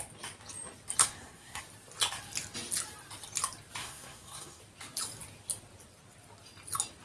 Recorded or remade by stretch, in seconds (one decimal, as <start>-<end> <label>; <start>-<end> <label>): 0.0-1.0 recorded; 1.0-1.6 remade; 1.6-3.8 recorded; 3.8-4.6 remade; 4.6-7.0 recorded